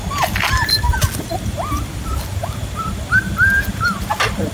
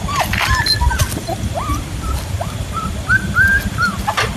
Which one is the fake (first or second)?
second